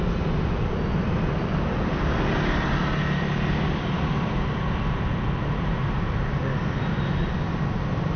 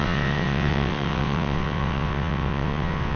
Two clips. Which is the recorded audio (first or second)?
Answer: first